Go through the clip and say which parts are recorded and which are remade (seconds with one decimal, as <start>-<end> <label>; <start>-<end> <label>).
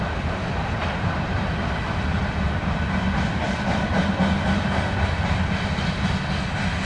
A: 0.0-0.8 recorded; 0.8-1.6 remade; 1.6-6.9 recorded